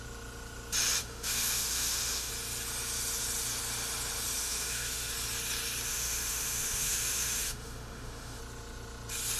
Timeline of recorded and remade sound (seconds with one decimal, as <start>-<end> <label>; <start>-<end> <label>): 0.0-1.0 recorded; 1.0-2.3 remade; 2.3-4.4 recorded; 4.4-5.1 remade; 5.1-5.9 recorded; 5.9-8.4 remade; 8.4-9.4 recorded